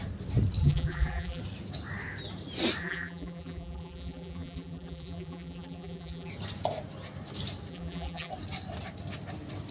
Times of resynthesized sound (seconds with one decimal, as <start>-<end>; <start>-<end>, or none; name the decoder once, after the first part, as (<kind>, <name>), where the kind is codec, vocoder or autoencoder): 0.6-1.4 (vocoder, BigVGAN v2); 2.8-6.3; 7.7-8.3